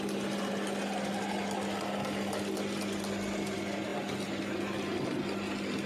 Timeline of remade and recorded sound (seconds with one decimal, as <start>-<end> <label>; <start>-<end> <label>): 0.0-5.9 recorded